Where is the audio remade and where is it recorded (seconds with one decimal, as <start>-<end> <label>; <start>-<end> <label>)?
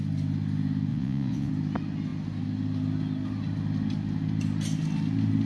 0.0-0.9 recorded; 0.9-1.5 remade; 1.5-5.5 recorded